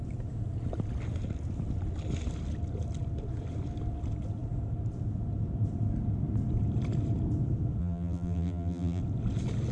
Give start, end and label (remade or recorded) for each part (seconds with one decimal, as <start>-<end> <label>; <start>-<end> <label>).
0.0-7.8 recorded; 7.8-9.0 remade; 9.0-9.7 recorded